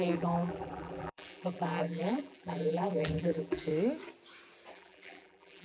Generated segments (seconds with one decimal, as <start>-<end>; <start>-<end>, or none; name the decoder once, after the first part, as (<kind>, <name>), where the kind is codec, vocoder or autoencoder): 0.0-3.7 (vocoder, BigVGAN v2); 4.7-5.6